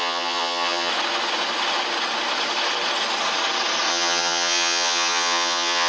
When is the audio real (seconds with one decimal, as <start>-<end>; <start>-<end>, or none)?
0.9-3.9